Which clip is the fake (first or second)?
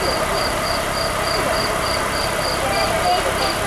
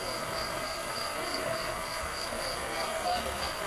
second